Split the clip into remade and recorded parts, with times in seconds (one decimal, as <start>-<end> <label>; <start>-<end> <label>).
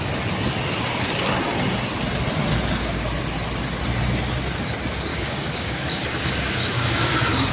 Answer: 0.0-5.1 recorded; 5.1-7.5 remade